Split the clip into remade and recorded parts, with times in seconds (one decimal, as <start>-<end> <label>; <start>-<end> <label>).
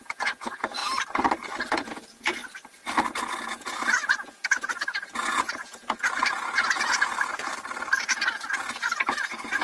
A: 0.0-0.8 remade; 0.8-1.7 recorded; 1.7-2.4 remade; 2.4-3.4 recorded; 3.4-7.5 remade; 7.5-8.0 recorded; 8.0-9.6 remade